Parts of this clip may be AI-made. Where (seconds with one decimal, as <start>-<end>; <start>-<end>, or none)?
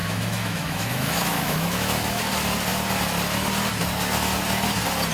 0.0-2.2